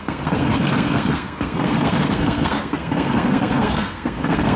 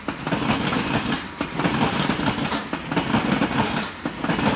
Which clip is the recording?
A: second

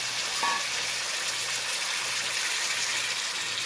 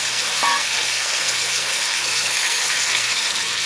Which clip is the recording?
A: first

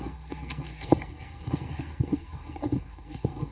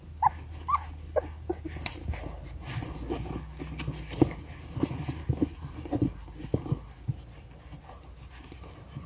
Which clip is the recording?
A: second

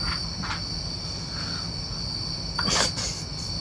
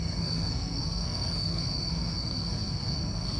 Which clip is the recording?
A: first